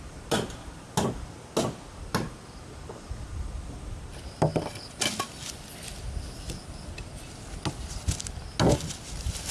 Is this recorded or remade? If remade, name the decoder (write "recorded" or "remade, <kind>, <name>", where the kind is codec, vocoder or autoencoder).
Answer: recorded